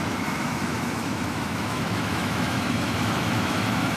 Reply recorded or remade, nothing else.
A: remade